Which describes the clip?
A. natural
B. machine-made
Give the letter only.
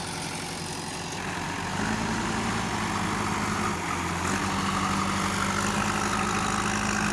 A